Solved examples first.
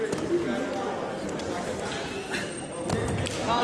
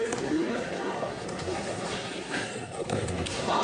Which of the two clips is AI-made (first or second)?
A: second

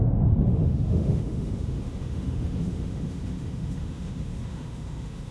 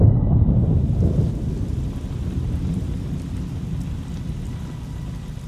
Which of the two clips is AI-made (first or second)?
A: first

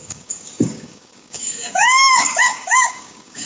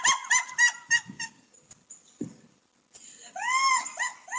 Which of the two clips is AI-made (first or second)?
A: first